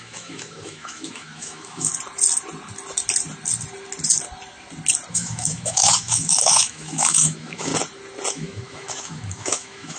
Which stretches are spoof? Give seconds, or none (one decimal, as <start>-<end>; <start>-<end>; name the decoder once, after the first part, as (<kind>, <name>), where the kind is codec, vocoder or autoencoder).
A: 0.0-1.9 (autoencoder, DAC-VAE); 5.1-7.7; 8.3-10.0